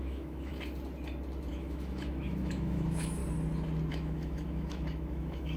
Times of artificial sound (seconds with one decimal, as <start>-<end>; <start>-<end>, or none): 0.0-0.5; 1.5-3.2; 3.9-5.6